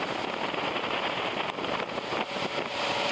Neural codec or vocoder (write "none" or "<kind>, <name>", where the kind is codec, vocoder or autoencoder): none